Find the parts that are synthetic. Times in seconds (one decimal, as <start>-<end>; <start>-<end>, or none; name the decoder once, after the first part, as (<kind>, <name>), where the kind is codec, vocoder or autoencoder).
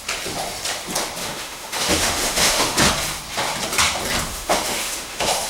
1.2-2.9 (autoencoder, DAC-VAE); 4.3-5.5